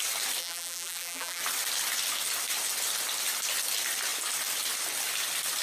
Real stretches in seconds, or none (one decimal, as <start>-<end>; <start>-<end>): 0.0-0.4; 1.4-5.6